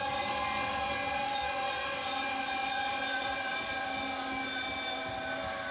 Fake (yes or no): no